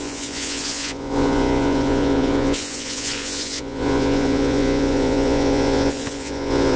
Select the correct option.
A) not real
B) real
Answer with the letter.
A